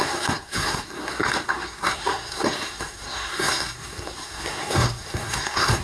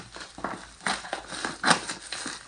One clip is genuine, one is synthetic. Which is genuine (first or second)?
second